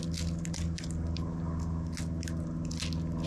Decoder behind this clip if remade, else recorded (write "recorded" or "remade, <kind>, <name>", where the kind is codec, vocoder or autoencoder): recorded